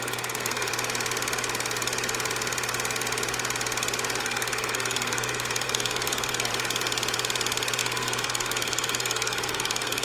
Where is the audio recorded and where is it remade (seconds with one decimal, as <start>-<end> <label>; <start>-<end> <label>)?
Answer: 0.0-0.7 remade; 0.7-4.2 recorded; 4.2-6.5 remade; 6.5-7.8 recorded; 7.8-10.0 remade